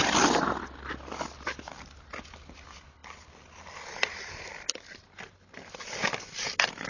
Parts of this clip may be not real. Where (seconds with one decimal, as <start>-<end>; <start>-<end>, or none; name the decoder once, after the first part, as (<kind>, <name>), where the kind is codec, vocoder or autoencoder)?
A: none